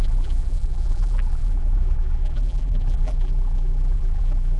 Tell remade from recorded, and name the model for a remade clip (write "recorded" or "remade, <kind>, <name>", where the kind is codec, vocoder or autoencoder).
remade, vocoder, BigVGAN v2